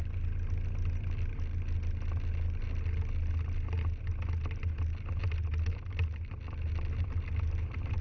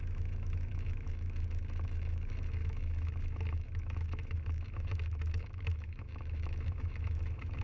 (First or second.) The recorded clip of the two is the first